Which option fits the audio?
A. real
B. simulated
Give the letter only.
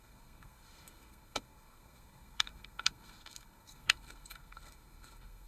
B